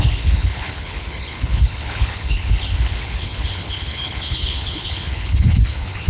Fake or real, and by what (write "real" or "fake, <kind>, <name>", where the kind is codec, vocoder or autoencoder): fake, codec, HILCodec